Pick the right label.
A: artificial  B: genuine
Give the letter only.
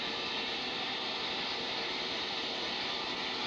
B